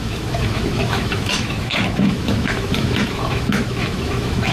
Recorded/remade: remade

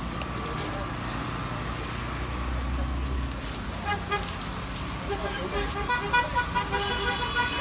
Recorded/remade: recorded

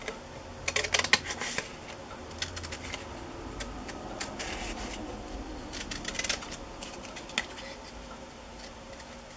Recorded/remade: recorded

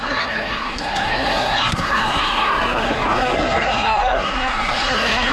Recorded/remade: remade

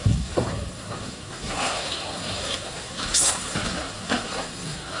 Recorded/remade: remade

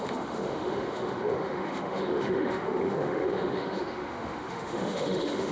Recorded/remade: remade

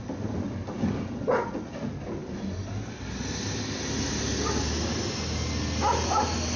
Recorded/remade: recorded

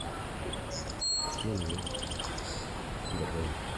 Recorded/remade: recorded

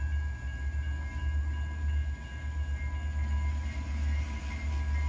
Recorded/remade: recorded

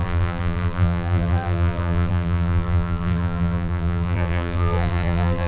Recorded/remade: remade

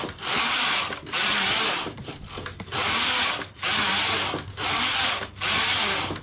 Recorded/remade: recorded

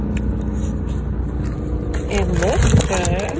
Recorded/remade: recorded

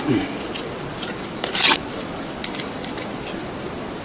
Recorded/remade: remade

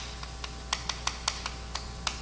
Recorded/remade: recorded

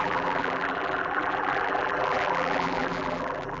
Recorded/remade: remade